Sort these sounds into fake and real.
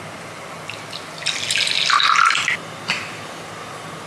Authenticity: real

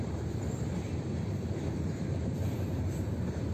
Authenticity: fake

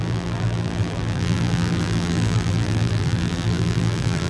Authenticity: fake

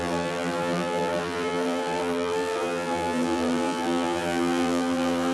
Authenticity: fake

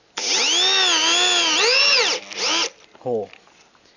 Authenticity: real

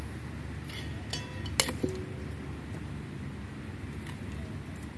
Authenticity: real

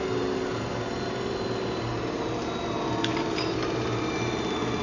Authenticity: fake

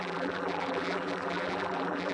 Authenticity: fake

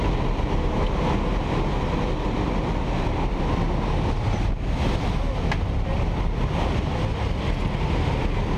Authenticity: real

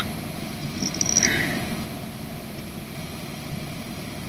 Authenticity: real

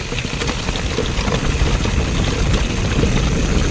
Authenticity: real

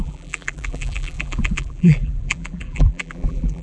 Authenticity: fake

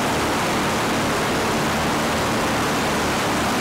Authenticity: real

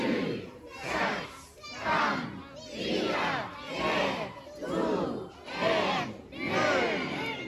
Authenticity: real